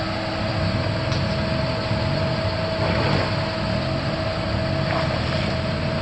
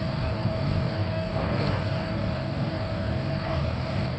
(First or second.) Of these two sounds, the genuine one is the first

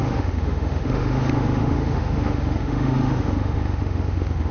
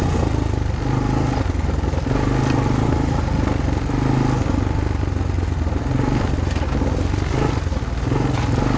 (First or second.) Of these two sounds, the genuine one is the second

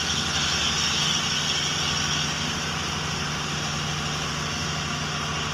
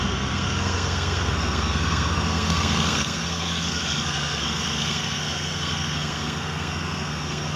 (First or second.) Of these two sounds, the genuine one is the first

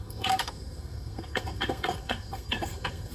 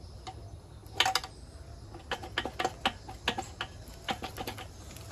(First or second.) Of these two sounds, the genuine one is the second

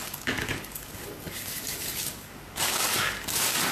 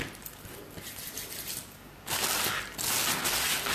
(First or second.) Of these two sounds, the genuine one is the second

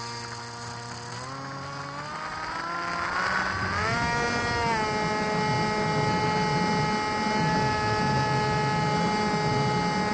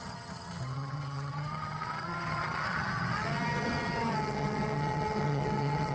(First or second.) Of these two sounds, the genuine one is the first